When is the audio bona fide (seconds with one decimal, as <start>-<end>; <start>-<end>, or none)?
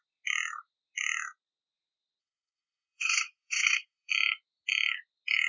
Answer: 0.0-2.2; 4.1-5.5